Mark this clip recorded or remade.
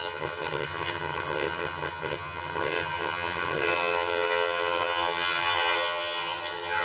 remade